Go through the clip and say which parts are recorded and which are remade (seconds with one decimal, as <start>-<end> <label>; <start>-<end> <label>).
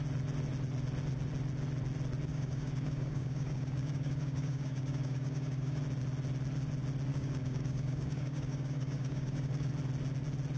0.0-2.3 recorded; 2.3-5.8 remade; 5.8-7.1 recorded; 7.1-9.7 remade; 9.7-10.6 recorded